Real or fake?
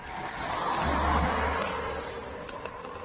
real